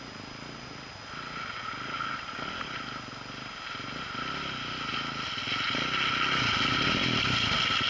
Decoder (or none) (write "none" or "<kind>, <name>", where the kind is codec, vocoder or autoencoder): none